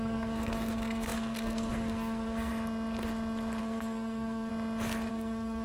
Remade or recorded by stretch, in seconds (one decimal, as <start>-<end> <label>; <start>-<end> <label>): 0.0-2.5 remade; 2.5-3.6 recorded; 3.6-4.5 remade; 4.5-5.1 recorded; 5.1-5.6 remade